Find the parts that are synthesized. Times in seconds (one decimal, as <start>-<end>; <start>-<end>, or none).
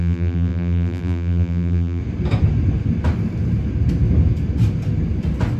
0.0-2.0